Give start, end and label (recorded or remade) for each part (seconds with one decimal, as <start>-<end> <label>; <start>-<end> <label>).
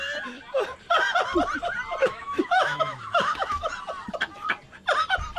0.0-2.0 recorded; 2.0-3.7 remade; 3.7-5.4 recorded